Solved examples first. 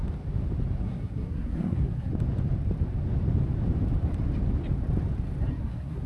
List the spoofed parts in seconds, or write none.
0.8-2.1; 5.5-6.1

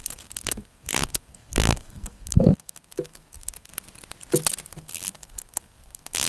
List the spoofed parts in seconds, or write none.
0.0-3.7; 4.7-6.3

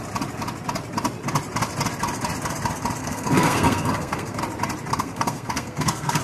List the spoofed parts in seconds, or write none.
3.0-4.4; 4.9-6.2

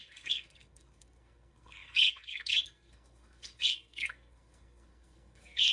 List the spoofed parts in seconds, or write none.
0.0-5.7

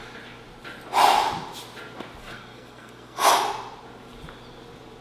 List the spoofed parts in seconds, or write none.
2.2-3.3

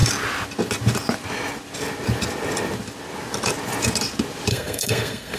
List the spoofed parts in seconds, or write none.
4.5-5.4

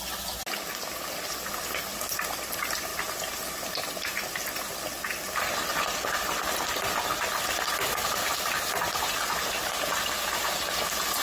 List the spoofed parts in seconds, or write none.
none